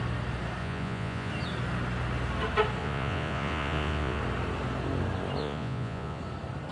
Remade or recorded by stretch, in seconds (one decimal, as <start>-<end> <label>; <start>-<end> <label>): 0.0-0.6 recorded; 0.6-1.3 remade; 1.3-2.8 recorded; 2.8-4.2 remade; 4.2-5.4 recorded; 5.4-6.2 remade; 6.2-6.7 recorded